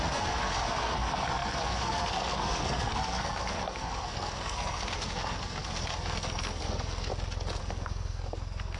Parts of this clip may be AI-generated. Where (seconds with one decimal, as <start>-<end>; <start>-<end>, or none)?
0.0-7.1; 7.6-8.8